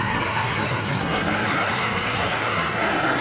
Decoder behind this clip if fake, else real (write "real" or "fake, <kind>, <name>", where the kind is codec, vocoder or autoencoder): fake, codec, SNAC